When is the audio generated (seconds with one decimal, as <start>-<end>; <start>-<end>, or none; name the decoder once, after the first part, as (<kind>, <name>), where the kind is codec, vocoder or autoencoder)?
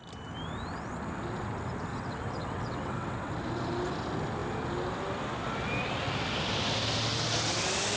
1.9-3.3 (vocoder, WaveNeXt)